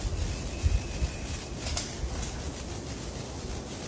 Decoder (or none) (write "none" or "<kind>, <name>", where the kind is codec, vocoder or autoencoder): none